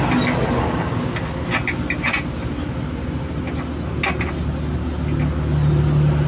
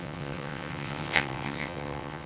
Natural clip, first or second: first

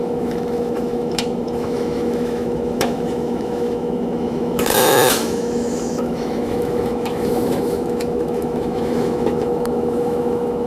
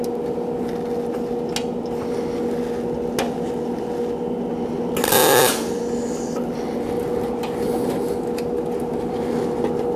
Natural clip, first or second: second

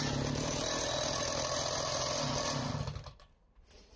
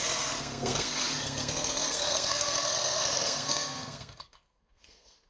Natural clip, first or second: first